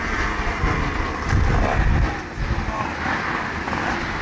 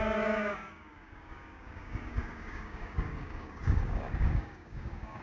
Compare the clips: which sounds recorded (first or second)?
first